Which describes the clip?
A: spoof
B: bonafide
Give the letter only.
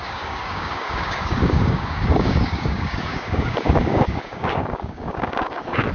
A